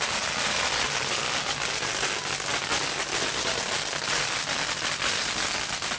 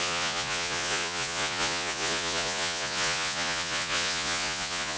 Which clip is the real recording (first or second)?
first